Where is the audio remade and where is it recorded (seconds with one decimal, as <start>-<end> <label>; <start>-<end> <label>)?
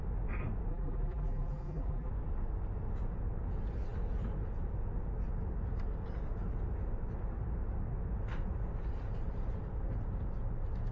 0.0-0.7 recorded; 0.7-2.1 remade; 2.1-10.9 recorded